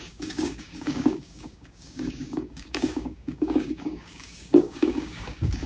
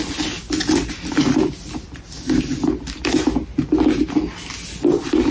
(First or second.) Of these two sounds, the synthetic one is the first